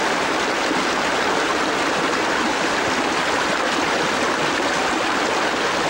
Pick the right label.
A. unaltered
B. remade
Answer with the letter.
A